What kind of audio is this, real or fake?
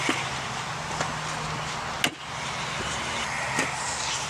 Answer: real